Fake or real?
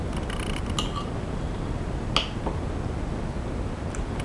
real